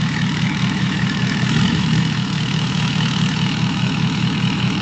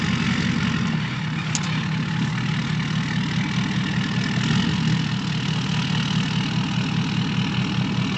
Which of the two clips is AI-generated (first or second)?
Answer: first